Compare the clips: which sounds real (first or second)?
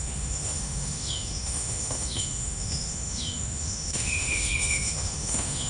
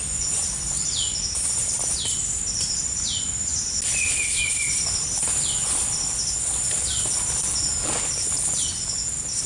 second